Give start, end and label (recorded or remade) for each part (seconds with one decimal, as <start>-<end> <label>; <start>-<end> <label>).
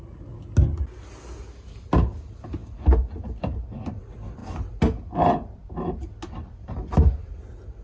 0.0-7.8 recorded